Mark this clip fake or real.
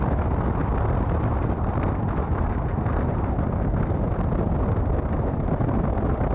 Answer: real